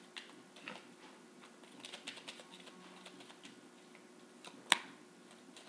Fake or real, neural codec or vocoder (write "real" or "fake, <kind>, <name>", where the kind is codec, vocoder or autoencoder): real